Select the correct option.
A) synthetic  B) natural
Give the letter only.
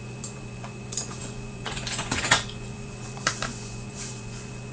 A